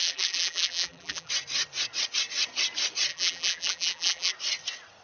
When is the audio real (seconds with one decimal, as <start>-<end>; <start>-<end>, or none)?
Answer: 1.3-3.1; 4.3-5.0